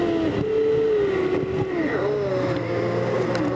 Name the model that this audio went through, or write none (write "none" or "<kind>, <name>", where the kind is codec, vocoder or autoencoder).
none